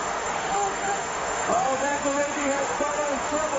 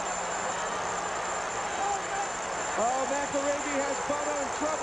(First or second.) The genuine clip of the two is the second